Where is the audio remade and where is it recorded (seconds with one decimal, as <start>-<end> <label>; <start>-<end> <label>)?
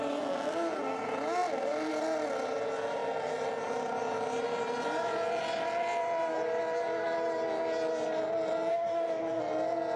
0.0-8.7 recorded; 8.7-9.4 remade; 9.4-10.0 recorded